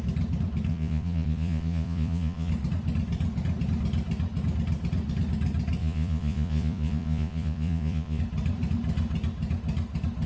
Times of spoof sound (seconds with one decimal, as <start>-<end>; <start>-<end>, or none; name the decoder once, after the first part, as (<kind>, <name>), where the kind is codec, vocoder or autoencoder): 0.7-2.5 (vocoder, Vocos); 5.8-8.2